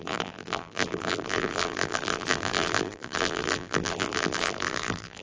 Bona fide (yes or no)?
no